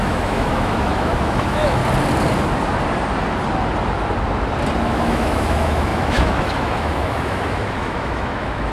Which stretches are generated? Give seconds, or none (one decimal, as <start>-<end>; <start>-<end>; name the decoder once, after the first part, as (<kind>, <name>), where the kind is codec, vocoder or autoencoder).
0.0-1.8 (autoencoder, DAC-VAE); 4.8-8.7